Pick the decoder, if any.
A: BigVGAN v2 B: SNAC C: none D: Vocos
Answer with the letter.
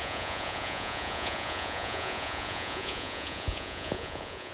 D